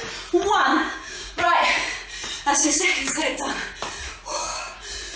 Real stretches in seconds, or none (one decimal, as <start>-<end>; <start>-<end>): 0.0-0.7; 1.3-2.6; 3.4-4.3; 4.8-5.2